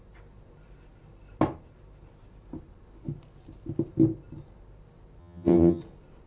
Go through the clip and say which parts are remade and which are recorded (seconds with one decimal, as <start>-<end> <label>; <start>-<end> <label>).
0.0-5.2 recorded; 5.2-5.8 remade; 5.8-6.3 recorded